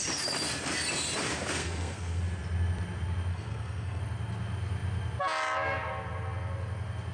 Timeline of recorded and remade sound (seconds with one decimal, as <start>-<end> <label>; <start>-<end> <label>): 0.0-1.6 recorded; 1.6-2.2 remade; 2.2-3.3 recorded; 3.3-4.0 remade; 4.0-7.1 recorded